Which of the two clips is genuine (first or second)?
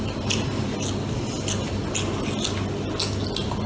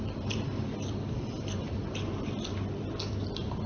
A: first